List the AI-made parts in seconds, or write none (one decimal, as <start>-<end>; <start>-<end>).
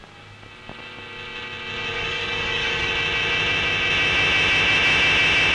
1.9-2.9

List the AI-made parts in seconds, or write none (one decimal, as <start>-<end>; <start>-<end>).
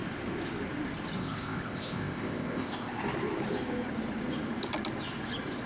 1.2-3.0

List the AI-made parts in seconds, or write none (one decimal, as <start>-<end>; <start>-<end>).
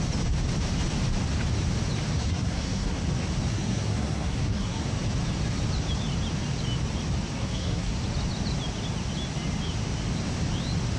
2.2-3.0; 3.5-4.8; 7.4-8.0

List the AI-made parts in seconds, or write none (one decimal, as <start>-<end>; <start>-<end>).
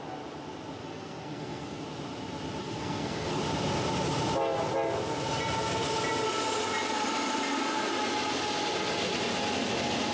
0.8-1.8; 2.6-3.4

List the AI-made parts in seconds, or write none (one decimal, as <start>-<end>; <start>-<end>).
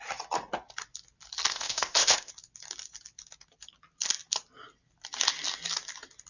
1.5-2.3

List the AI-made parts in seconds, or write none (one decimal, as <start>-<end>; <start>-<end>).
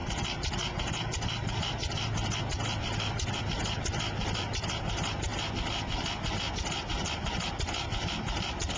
0.0-5.3; 6.5-8.8